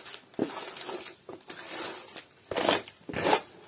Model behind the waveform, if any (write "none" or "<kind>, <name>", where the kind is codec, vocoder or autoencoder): none